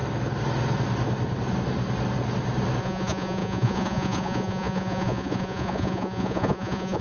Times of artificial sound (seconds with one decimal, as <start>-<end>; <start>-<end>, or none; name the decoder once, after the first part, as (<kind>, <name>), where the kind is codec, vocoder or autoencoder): 2.8-7.0 (vocoder, Vocos)

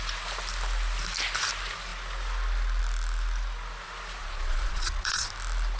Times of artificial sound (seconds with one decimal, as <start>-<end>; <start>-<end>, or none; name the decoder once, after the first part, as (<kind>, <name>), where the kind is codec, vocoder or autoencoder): 4.2-5.3 (vocoder, Vocos)

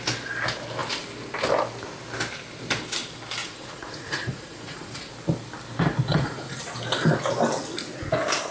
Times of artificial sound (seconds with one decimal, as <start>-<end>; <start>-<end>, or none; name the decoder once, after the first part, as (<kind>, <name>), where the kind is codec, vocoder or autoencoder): 3.4-5.1 (vocoder, Vocos); 6.1-6.6